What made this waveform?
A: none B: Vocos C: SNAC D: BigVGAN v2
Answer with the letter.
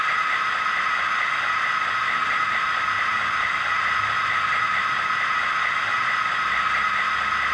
A